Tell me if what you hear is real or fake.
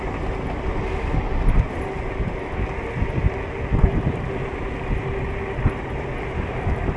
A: real